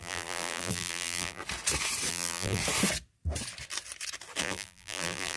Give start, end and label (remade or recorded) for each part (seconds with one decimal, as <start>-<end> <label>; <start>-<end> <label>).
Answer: 0.0-1.4 remade; 1.4-2.1 recorded; 2.1-2.6 remade; 2.6-4.4 recorded; 4.4-5.4 remade

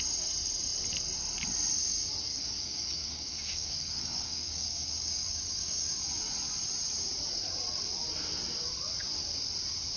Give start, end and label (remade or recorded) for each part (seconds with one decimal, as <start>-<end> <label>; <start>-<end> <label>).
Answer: 0.0-2.3 recorded; 2.3-6.0 remade; 6.0-10.0 recorded

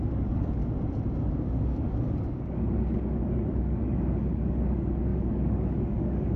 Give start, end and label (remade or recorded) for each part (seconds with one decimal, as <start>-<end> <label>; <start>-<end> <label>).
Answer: 0.0-0.6 remade; 0.6-1.2 recorded; 1.2-6.4 remade

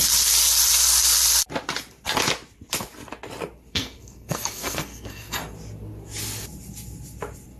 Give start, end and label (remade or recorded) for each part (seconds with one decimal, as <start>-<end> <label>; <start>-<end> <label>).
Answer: 0.0-3.7 recorded; 3.7-5.4 remade; 5.4-7.6 recorded

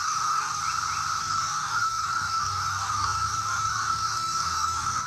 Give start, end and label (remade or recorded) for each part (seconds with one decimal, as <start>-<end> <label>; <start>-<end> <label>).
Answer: 0.0-0.6 remade; 0.6-1.2 recorded; 1.2-5.1 remade

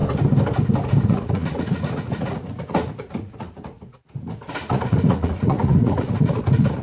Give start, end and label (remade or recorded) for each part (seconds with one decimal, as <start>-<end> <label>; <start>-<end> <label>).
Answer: 0.0-0.9 recorded; 0.9-6.8 remade

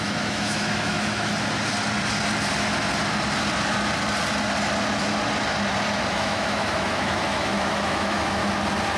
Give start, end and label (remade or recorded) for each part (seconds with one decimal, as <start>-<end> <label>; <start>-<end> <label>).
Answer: 0.0-1.3 remade; 1.3-6.1 recorded; 6.1-8.4 remade; 8.4-9.0 recorded